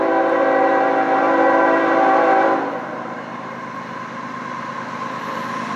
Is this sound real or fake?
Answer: real